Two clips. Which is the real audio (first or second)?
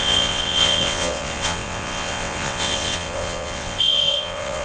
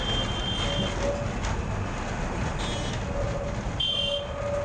second